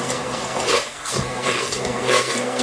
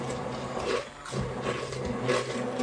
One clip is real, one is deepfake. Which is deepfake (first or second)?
first